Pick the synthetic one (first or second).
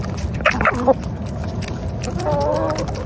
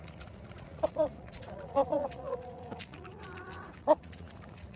second